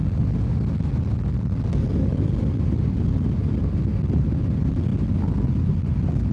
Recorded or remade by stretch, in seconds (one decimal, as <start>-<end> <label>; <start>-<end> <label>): 0.0-6.3 recorded